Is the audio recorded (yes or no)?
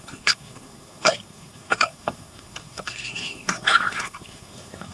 no